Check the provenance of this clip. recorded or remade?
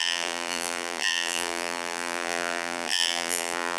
remade